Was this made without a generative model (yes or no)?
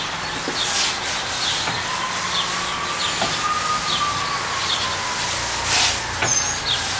yes